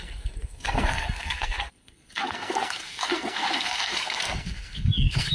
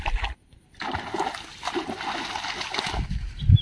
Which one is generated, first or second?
first